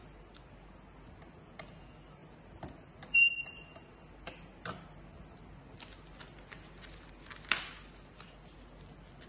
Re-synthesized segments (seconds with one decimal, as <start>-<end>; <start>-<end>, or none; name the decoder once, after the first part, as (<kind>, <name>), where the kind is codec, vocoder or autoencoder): none